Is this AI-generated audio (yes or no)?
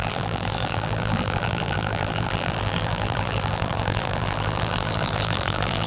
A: yes